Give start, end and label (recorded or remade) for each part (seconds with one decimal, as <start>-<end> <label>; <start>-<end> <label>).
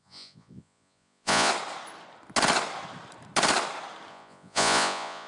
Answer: 0.0-1.5 remade; 1.5-4.1 recorded; 4.1-5.3 remade